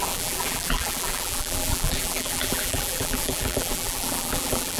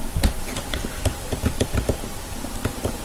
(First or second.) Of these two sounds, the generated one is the first